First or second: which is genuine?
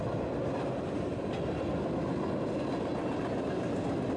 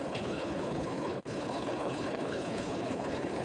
first